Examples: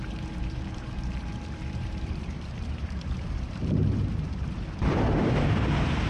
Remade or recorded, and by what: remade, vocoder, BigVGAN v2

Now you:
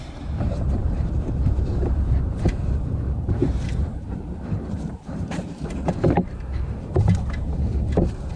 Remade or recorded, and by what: remade, vocoder, BigVGAN v2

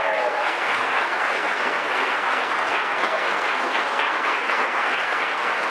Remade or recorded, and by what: remade, codec, SNAC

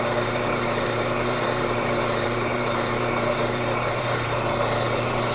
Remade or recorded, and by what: remade, vocoder, BigVGAN v2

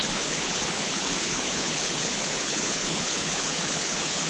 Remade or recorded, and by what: remade, codec, HILCodec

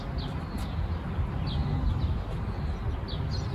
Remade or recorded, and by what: recorded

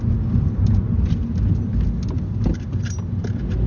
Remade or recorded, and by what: recorded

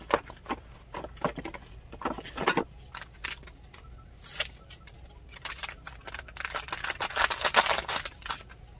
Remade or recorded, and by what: recorded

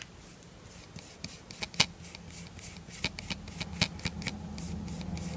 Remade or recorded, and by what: recorded